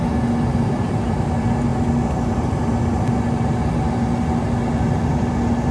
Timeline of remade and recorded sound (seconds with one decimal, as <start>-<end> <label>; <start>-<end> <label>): 0.0-5.7 recorded